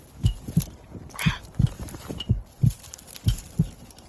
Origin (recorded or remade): recorded